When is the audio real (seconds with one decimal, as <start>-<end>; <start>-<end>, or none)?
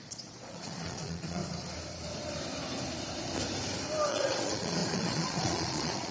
1.4-4.1